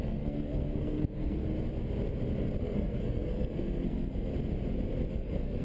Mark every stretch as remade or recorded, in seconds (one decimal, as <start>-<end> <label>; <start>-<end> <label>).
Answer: 0.0-1.4 remade; 1.4-2.6 recorded; 2.6-4.3 remade; 4.3-5.1 recorded; 5.1-5.6 remade